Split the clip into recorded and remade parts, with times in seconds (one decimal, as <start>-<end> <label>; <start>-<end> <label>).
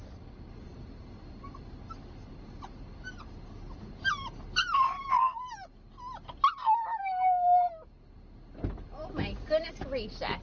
0.0-10.4 recorded